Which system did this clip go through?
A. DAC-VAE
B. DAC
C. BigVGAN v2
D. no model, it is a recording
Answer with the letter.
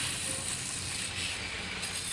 D